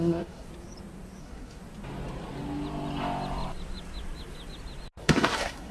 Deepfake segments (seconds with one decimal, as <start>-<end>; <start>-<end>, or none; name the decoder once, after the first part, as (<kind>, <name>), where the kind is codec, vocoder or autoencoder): 0.0-0.5 (codec, SNAC); 1.2-1.6; 5.0-5.7

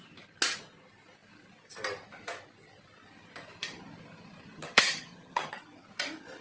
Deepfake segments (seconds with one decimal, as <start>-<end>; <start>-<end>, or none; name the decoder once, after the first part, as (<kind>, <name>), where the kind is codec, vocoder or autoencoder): 4.6-5.6 (vocoder, HiFi-GAN)